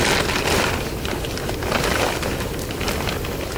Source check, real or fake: real